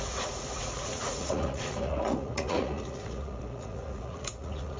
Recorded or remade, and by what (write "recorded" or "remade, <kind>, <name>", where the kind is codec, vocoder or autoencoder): remade, vocoder, Vocos